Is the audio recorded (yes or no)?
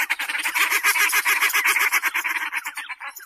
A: yes